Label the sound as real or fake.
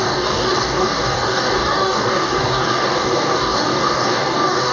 fake